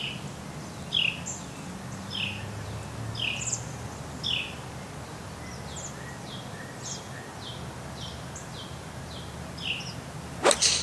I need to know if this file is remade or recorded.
recorded